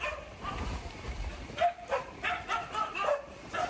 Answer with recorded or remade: remade